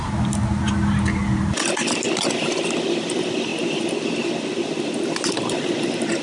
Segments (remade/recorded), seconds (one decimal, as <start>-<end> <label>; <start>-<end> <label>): 0.0-6.2 recorded